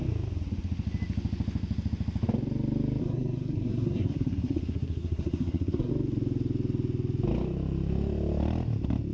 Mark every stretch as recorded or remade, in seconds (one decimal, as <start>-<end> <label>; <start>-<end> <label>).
0.0-3.0 recorded; 3.0-5.9 remade; 5.9-9.1 recorded